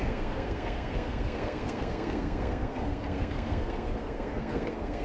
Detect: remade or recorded remade